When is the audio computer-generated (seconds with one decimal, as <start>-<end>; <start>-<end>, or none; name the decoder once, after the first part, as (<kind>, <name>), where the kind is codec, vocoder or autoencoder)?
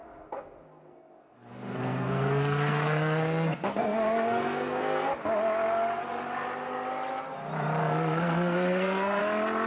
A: 0.0-5.1 (codec, SNAC); 7.8-9.2